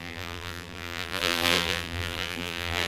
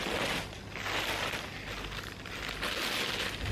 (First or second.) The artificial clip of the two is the first